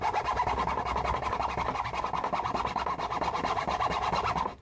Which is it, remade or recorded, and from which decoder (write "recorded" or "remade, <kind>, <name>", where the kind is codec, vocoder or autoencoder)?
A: recorded